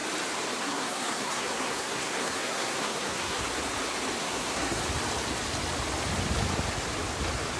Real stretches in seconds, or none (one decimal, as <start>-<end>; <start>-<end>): 0.0-0.6; 3.4-4.2; 4.8-7.6